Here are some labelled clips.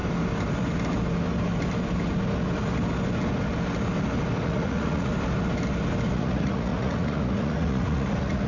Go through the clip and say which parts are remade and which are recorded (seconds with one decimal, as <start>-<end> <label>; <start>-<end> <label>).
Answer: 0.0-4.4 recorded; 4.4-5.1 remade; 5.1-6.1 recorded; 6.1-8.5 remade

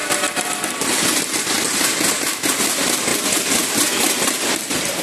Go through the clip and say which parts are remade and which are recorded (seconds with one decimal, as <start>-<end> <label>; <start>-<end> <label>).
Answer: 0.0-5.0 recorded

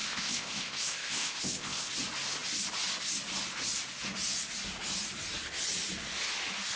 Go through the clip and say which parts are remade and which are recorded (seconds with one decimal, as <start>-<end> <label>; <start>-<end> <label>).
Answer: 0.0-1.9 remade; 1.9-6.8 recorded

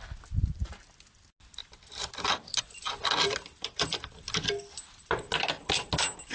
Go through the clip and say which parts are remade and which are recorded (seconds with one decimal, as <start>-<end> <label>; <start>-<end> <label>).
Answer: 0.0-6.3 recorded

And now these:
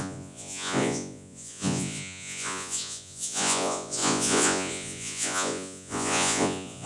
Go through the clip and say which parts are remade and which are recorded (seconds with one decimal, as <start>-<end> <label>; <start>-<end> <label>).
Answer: 0.0-6.9 remade

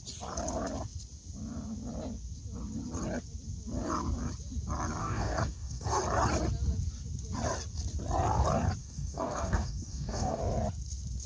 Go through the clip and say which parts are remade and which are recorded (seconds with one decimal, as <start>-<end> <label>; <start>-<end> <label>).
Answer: 0.0-5.0 recorded; 5.0-6.0 remade; 6.0-8.8 recorded; 8.8-10.4 remade; 10.4-11.3 recorded